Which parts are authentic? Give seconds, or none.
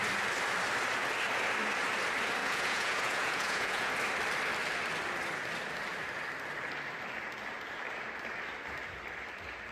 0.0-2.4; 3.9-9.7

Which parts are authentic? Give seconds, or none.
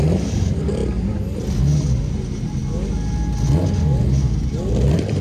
0.0-5.2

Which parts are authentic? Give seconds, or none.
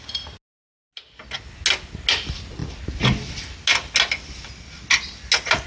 0.0-5.7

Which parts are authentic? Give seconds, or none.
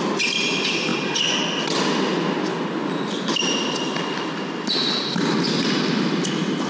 0.0-6.7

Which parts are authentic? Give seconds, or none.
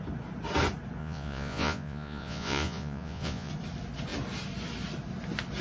0.0-1.0; 3.5-5.6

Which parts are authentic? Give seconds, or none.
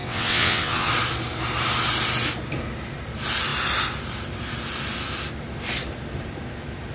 0.9-6.9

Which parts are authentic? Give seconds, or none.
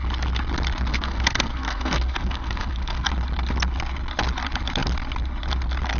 0.0-0.9; 3.1-6.0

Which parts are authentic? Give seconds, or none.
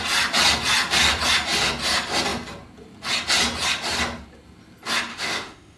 0.0-5.1